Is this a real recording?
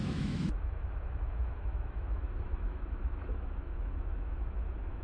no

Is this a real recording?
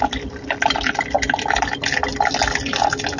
yes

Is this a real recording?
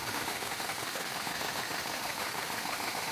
no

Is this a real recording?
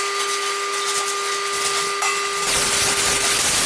yes